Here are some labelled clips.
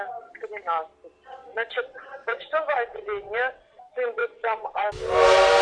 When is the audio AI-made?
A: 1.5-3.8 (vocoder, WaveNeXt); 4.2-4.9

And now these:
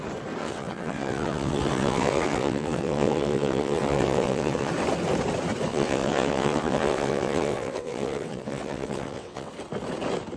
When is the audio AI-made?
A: 0.4-4.7 (vocoder, WaveNeXt); 5.7-9.5

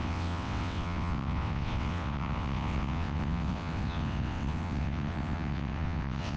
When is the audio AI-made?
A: 0.0-6.4 (vocoder, WaveNeXt)

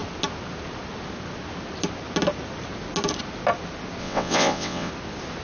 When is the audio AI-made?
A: 4.0-4.9 (vocoder, WaveNeXt)

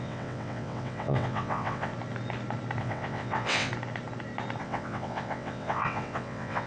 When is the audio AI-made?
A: 0.0-1.9 (vocoder, WaveNeXt); 2.8-3.7; 4.6-6.7

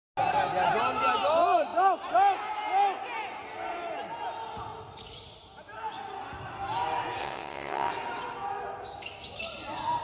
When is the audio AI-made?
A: 7.2-7.9 (vocoder, WaveNeXt)

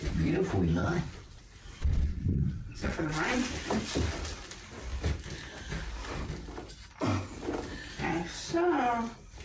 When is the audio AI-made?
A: 0.8-1.4 (vocoder, WaveNeXt); 1.8-3.4

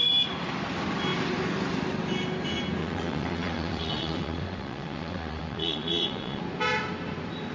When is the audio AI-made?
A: 2.8-6.4 (vocoder, WaveNeXt)